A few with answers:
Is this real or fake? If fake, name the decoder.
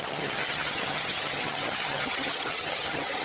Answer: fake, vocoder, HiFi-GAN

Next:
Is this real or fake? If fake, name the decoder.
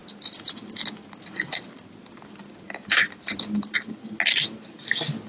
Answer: real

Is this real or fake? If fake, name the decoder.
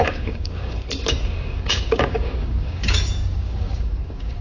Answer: fake, codec, DAC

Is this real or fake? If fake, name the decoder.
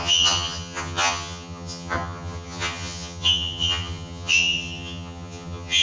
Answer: fake, vocoder, HiFi-GAN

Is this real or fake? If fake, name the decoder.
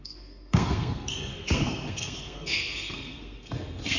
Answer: fake, codec, SNAC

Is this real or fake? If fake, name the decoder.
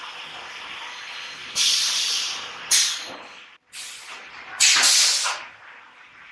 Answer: real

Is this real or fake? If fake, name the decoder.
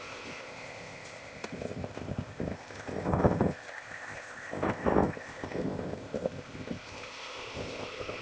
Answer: fake, codec, ZipCodec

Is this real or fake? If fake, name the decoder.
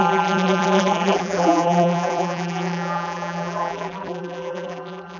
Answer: fake, vocoder, BigVGAN v2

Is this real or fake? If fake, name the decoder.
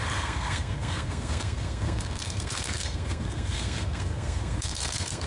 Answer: fake, codec, SNAC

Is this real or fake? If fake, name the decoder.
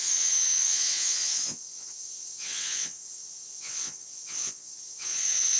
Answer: fake, vocoder, WaveNeXt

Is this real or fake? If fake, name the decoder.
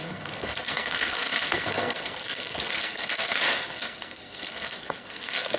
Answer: fake, codec, SNAC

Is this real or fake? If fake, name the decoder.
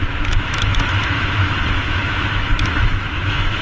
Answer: fake, autoencoder, DAC-VAE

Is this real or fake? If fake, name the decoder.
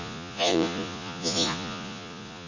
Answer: fake, vocoder, Vocos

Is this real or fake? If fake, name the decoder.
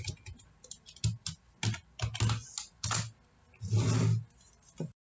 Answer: real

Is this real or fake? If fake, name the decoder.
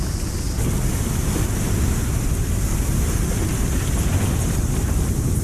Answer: real